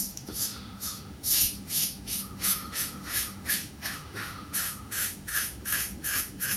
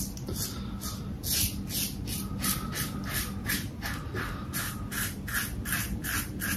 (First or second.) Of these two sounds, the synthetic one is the first